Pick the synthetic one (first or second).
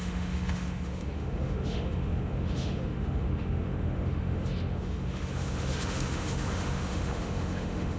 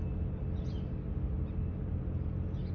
first